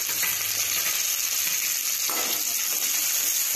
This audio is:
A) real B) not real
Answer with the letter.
A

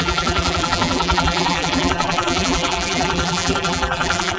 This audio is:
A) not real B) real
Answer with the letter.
A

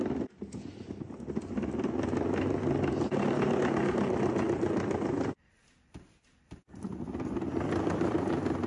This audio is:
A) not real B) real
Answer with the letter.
B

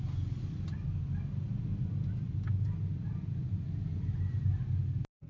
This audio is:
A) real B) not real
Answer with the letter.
A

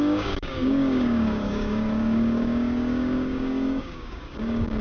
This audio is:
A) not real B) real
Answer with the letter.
A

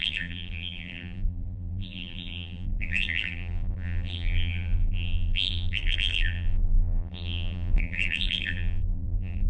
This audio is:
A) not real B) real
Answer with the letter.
A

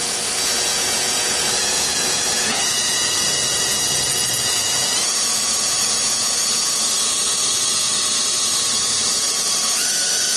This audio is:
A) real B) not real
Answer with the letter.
B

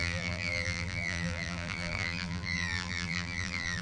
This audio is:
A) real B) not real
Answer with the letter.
B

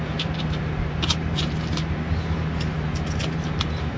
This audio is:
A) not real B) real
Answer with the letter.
A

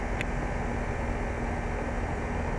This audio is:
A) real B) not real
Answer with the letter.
A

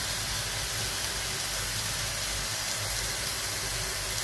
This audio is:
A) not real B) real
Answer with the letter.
B